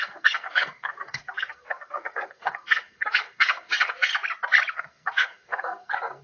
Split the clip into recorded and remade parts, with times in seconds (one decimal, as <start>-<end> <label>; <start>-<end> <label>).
0.0-4.1 remade; 4.1-4.7 recorded; 4.7-6.2 remade